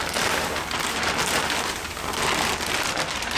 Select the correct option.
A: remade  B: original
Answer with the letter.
B